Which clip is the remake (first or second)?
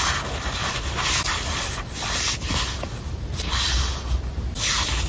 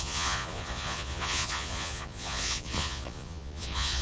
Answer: second